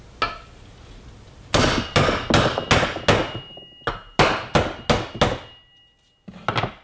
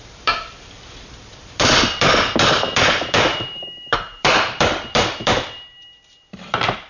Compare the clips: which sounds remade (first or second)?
second